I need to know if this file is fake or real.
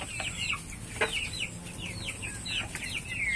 real